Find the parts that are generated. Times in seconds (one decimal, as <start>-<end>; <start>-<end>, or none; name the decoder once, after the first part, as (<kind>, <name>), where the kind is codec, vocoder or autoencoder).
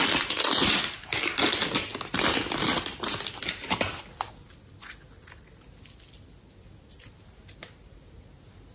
none